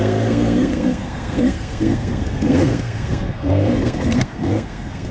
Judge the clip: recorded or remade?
remade